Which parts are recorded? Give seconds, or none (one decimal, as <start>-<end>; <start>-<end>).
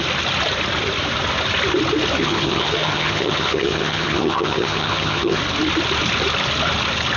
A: 0.0-2.2; 5.4-7.2